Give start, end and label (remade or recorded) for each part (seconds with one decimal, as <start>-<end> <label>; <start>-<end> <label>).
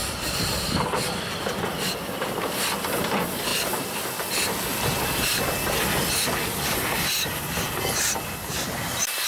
0.0-9.3 recorded